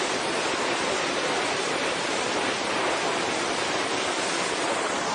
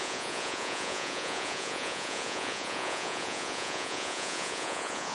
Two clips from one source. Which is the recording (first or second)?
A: first